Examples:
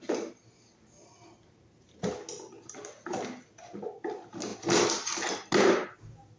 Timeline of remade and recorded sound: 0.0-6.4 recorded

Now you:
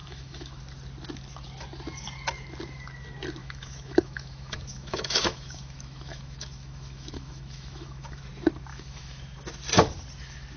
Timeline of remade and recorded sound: 0.0-0.6 remade; 0.6-3.4 recorded; 3.4-8.2 remade; 8.2-8.7 recorded; 8.7-9.2 remade; 9.2-10.6 recorded

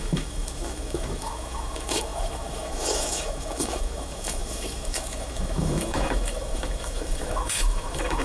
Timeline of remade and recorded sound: 0.0-8.2 remade

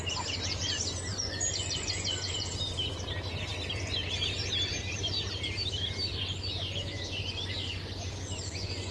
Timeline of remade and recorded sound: 0.0-1.1 recorded; 1.1-2.5 remade; 2.5-6.2 recorded; 6.2-8.9 remade

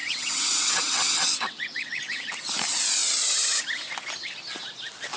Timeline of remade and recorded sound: 0.0-2.3 remade; 2.3-5.2 recorded